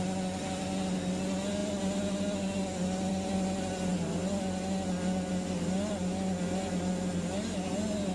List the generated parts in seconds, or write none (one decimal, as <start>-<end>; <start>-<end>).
none